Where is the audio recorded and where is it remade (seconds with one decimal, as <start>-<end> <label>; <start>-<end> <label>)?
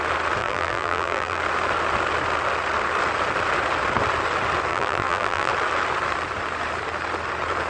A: 0.0-0.4 recorded; 0.4-1.4 remade; 1.4-4.7 recorded; 4.7-5.5 remade; 5.5-7.7 recorded